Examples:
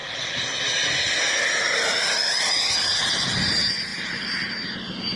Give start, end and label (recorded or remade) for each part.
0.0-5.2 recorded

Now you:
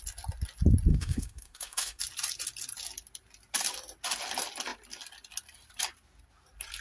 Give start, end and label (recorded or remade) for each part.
0.0-0.9 recorded; 0.9-2.0 remade; 2.0-6.8 recorded

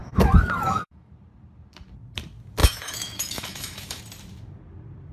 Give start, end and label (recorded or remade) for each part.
0.0-1.1 remade; 1.1-2.6 recorded; 2.6-4.0 remade; 4.0-5.1 recorded

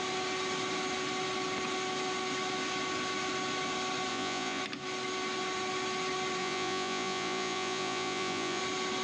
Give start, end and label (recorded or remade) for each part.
0.0-4.1 recorded; 4.1-4.6 remade; 4.6-6.4 recorded; 6.4-8.6 remade; 8.6-9.0 recorded

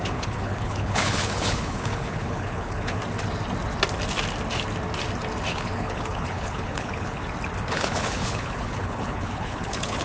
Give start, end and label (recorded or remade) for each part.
0.0-3.0 remade; 3.0-5.5 recorded; 5.5-7.2 remade; 7.2-7.7 recorded; 7.7-10.0 remade

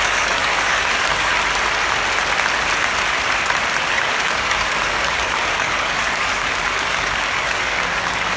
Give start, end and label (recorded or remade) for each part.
0.0-1.3 remade; 1.3-3.9 recorded; 3.9-8.4 remade

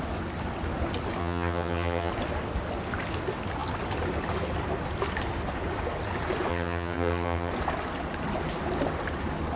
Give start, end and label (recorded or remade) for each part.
0.0-1.2 recorded; 1.2-2.1 remade; 2.1-6.5 recorded; 6.5-7.5 remade; 7.5-9.6 recorded